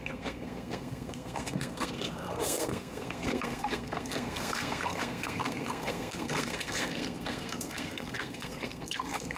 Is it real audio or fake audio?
fake